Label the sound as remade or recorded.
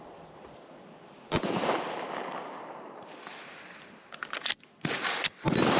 remade